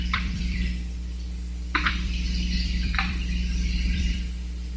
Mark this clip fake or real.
fake